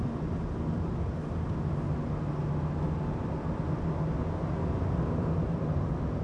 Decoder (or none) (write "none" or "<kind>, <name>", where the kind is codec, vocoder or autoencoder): none